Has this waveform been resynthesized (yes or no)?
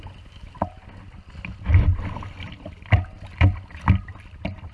no